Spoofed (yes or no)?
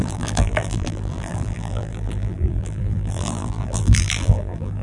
yes